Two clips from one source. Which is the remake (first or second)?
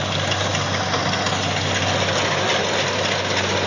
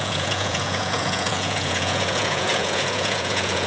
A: second